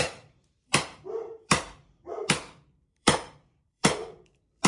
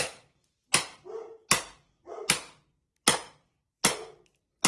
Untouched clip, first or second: second